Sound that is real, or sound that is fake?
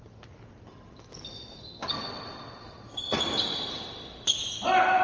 real